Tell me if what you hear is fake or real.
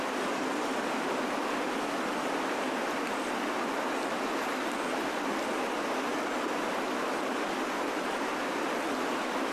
real